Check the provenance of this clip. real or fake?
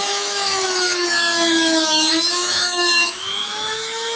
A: fake